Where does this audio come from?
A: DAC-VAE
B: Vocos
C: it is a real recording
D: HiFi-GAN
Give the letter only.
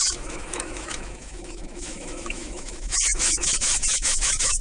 A